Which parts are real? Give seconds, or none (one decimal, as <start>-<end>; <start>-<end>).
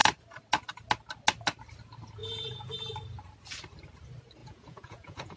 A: 0.0-2.2; 2.7-4.4